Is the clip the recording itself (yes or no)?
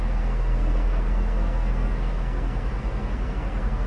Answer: no